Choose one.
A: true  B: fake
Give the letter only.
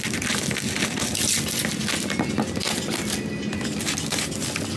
A